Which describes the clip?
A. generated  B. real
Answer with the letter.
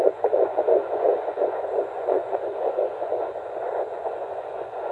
A